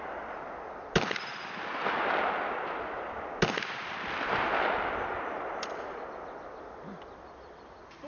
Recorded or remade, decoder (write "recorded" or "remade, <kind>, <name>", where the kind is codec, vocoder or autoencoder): recorded